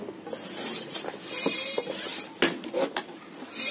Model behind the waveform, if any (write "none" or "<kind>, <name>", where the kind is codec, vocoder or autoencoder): none